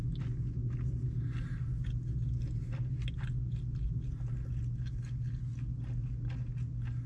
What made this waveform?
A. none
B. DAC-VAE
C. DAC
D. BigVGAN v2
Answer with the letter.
A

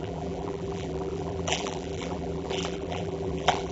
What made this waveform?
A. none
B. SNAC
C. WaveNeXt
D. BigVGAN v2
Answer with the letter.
D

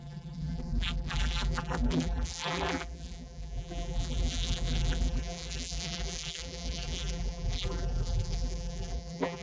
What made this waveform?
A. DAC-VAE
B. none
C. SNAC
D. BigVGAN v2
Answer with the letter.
D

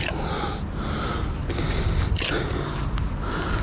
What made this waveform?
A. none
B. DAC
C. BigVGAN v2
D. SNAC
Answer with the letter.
A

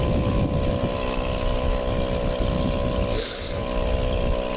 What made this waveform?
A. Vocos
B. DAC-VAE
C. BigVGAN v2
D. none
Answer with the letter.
D